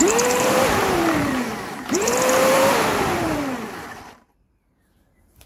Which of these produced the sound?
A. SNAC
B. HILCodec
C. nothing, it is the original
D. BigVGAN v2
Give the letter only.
D